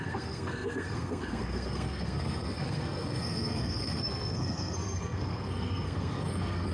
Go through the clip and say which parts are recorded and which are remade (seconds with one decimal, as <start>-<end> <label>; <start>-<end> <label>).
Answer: 0.0-6.7 remade

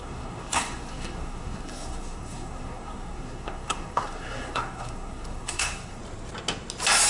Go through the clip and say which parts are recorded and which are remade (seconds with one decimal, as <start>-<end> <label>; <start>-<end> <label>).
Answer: 0.0-6.0 remade; 6.0-7.1 recorded